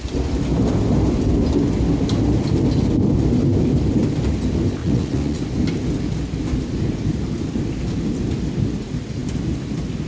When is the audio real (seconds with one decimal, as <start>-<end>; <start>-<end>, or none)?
0.0-4.8; 5.4-10.1